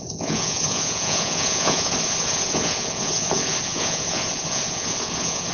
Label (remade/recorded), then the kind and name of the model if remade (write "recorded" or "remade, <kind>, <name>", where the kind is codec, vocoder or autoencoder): remade, vocoder, Vocos